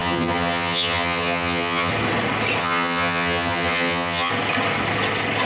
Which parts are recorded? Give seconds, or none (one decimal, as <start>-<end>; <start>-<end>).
1.9-2.6; 4.3-5.5